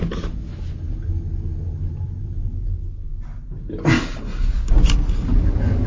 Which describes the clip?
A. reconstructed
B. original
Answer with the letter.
B